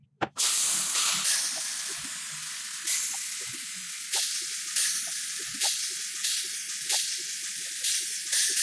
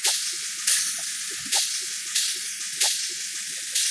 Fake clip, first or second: first